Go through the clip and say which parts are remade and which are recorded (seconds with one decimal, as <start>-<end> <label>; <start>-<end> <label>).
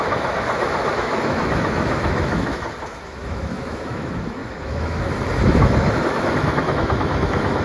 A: 0.0-7.6 remade